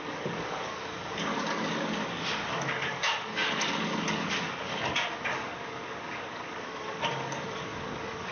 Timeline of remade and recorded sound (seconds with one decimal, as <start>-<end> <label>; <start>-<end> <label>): 0.0-8.3 remade